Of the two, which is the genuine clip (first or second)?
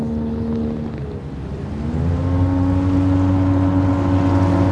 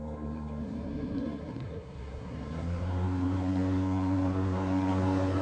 first